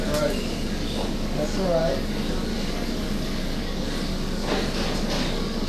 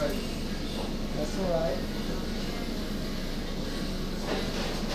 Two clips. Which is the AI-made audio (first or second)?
first